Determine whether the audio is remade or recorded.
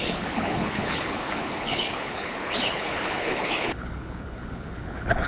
remade